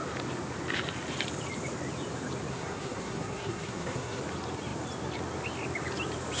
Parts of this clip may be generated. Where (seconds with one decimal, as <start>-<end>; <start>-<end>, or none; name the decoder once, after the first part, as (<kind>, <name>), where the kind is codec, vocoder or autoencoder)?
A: 2.5-4.2 (codec, SNAC)